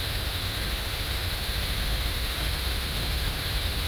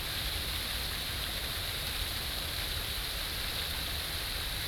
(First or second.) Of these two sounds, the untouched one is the second